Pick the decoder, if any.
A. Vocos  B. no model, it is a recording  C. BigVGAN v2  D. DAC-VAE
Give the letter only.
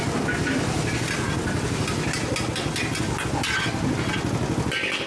B